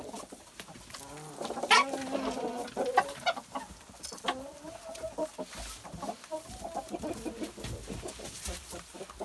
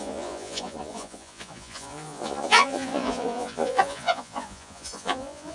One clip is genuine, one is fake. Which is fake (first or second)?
second